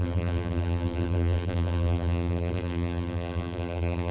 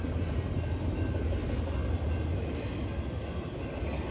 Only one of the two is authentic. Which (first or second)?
second